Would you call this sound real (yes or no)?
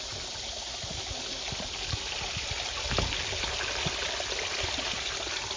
yes